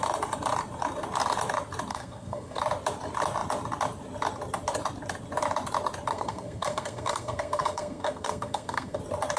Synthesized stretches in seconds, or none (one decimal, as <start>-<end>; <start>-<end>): 1.9-2.6; 6.1-9.0